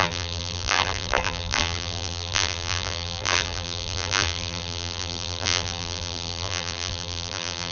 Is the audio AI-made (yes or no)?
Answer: yes